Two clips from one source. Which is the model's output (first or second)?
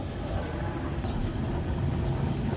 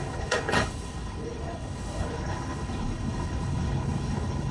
second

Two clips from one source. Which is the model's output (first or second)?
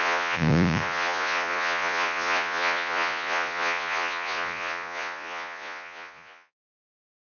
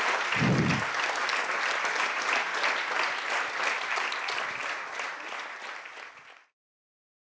first